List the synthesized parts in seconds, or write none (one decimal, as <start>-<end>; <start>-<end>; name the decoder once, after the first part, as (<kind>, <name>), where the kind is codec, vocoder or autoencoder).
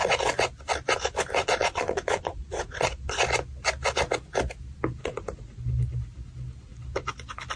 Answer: 1.4-3.2 (vocoder, Vocos); 5.0-5.6